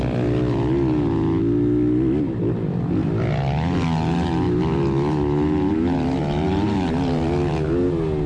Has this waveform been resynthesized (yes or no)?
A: no